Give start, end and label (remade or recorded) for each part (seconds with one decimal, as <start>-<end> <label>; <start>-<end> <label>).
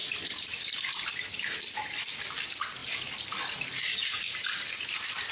0.0-5.3 recorded